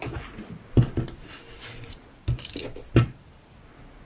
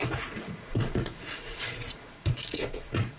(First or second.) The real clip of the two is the first